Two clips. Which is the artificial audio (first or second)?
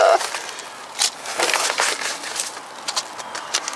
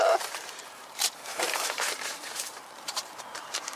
second